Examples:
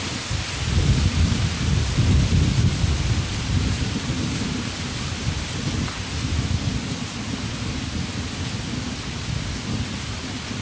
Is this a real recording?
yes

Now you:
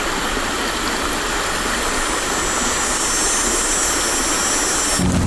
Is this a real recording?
yes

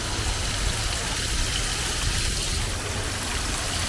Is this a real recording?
yes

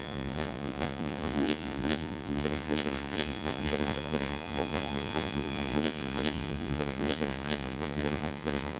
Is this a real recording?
no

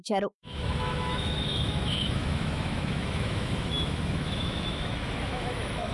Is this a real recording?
no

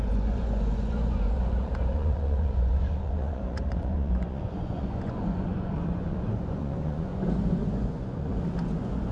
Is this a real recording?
no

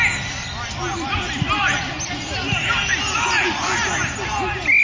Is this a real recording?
yes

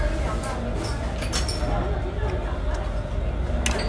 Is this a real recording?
yes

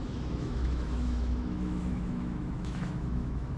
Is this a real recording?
no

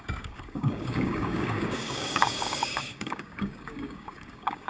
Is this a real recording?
no